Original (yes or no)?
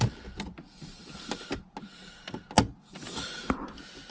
yes